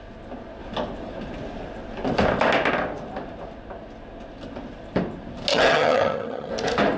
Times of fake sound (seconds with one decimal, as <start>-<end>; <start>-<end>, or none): 5.5-6.5